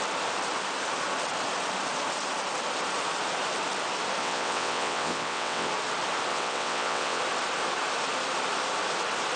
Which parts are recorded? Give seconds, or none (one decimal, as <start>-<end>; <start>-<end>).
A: 0.0-4.2; 5.7-6.3; 7.2-9.4

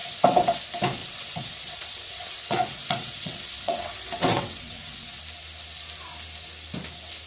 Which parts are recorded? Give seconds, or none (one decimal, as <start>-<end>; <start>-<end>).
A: 0.6-1.0; 5.2-7.3